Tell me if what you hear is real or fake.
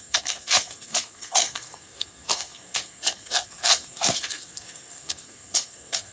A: fake